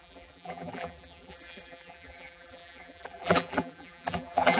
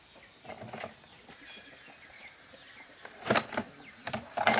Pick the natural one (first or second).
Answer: second